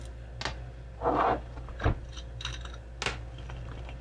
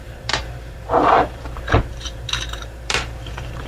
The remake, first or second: second